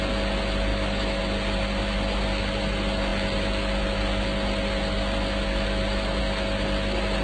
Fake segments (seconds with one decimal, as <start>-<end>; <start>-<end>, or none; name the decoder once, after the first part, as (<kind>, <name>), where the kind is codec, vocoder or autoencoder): 0.7-1.2 (autoencoder, DAC-VAE)